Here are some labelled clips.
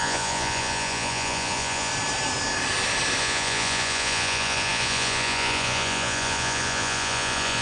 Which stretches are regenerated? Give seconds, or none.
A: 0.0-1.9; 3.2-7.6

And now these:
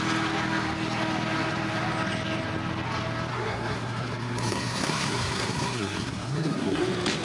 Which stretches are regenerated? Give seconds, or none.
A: 3.3-6.8

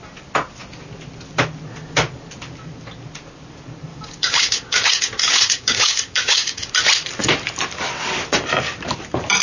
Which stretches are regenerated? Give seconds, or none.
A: 3.9-6.7